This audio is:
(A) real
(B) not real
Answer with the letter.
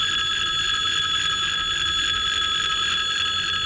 A